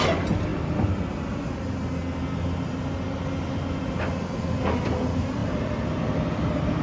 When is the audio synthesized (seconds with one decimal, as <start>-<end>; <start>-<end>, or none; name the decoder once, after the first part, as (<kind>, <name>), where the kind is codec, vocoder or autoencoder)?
none